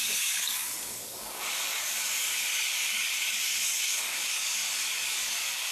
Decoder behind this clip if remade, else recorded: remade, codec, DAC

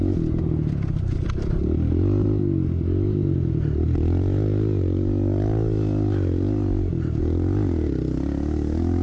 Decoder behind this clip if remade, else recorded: recorded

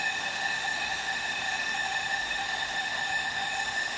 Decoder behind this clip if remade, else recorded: remade, autoencoder, DAC-VAE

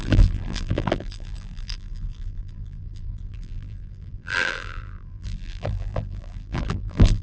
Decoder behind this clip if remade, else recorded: remade, vocoder, BigVGAN v2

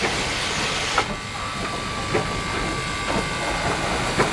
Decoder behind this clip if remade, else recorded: recorded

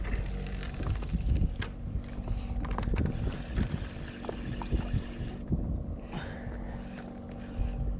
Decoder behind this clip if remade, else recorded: recorded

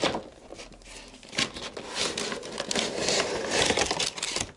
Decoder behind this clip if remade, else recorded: recorded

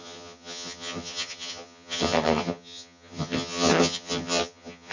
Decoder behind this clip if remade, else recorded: remade, vocoder, HiFi-GAN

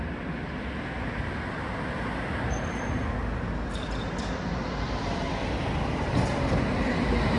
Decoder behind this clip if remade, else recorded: recorded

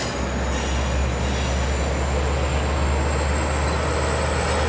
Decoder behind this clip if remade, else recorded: recorded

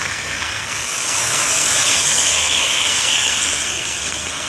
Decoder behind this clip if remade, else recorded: remade, codec, SNAC